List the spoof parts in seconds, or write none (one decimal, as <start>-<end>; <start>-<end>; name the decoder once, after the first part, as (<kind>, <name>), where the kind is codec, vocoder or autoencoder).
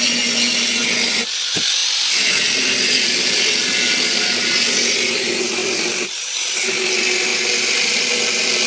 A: 1.8-3.5 (vocoder, BigVGAN v2); 5.6-6.8